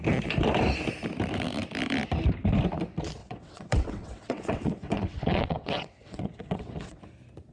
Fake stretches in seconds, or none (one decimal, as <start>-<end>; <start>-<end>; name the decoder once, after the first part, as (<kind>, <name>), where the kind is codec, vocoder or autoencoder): 3.2-7.0 (vocoder, WaveNeXt)